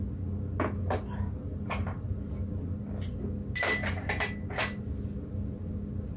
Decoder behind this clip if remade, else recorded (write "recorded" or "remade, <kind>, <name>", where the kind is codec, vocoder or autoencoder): recorded